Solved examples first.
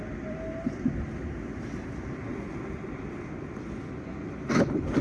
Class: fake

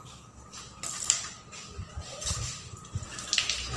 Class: real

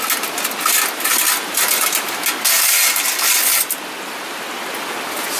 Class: real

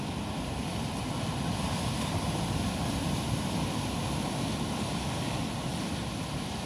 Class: fake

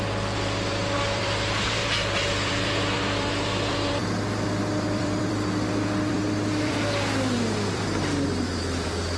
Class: fake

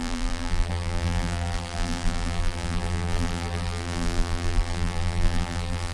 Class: fake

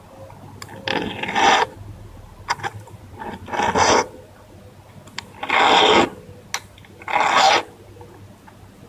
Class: real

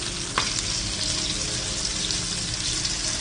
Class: real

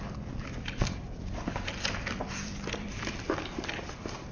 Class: fake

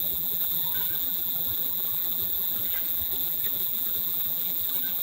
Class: fake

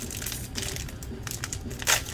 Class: fake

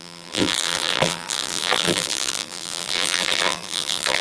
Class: fake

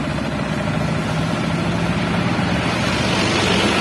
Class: real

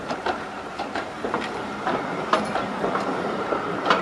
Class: fake